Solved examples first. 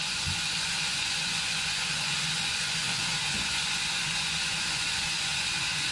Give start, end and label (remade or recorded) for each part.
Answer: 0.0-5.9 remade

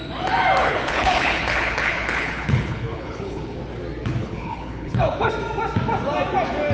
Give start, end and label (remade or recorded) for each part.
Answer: 0.0-0.6 recorded; 0.6-3.6 remade; 3.6-4.2 recorded; 4.2-5.3 remade; 5.3-6.7 recorded

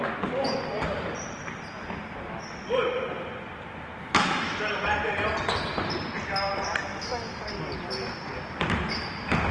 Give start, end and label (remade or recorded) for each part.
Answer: 0.0-4.0 recorded; 4.0-4.6 remade; 4.6-6.9 recorded; 6.9-7.4 remade; 7.4-9.5 recorded

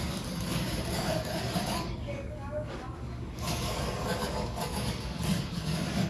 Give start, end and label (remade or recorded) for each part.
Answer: 0.0-6.1 remade

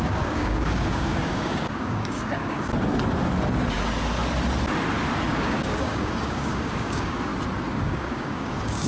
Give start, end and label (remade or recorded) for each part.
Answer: 0.0-2.7 remade; 2.7-5.3 recorded; 5.3-7.3 remade; 7.3-7.8 recorded; 7.8-8.9 remade

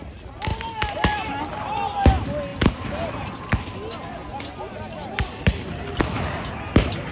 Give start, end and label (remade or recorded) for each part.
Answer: 0.0-0.5 recorded; 0.5-1.4 remade; 1.4-7.1 recorded